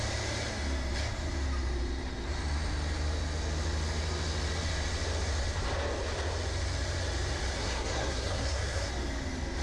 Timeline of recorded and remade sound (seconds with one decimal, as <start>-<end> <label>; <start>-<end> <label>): 0.0-7.6 recorded; 7.6-8.9 remade; 8.9-9.6 recorded